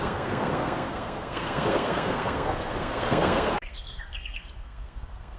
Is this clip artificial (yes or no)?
yes